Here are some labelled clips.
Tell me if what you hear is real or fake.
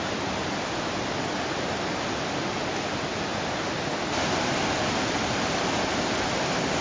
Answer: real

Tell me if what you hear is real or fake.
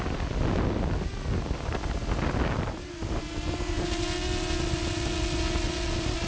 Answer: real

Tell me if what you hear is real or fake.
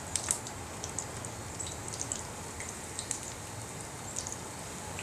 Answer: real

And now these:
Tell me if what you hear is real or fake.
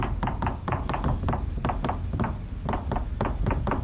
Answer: real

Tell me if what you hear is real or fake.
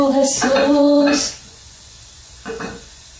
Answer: fake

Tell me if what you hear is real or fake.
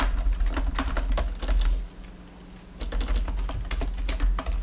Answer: real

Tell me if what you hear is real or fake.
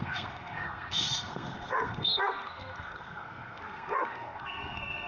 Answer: fake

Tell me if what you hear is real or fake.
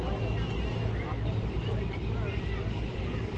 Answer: real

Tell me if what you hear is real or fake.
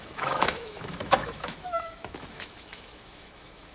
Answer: fake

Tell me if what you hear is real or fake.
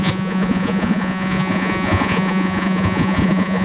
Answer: fake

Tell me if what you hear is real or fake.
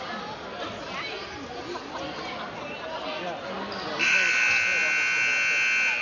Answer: real